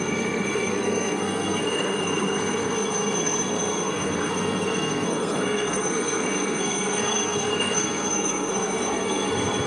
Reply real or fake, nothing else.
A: fake